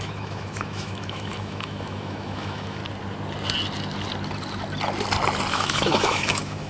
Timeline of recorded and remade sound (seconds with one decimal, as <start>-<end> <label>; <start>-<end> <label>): 0.0-2.8 remade; 2.8-5.5 recorded; 5.5-6.7 remade